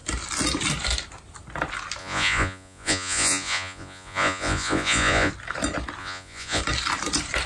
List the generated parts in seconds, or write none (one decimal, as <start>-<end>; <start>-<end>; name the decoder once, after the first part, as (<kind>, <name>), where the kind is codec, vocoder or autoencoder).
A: 2.0-5.3 (vocoder, Vocos); 6.0-6.6